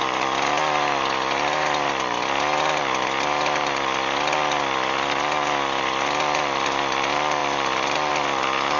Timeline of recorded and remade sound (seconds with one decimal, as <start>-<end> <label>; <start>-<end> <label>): 0.0-8.8 recorded